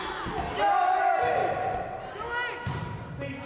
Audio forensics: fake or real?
real